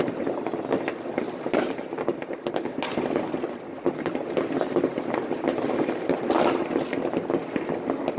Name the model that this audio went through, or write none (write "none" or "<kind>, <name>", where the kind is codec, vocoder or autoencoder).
none